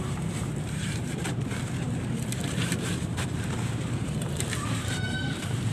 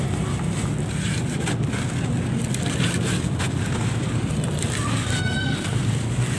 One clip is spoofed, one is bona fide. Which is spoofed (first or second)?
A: first